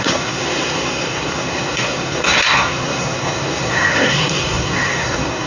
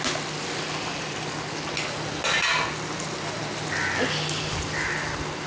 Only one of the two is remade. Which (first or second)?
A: first